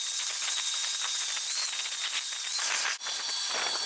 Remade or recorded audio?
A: recorded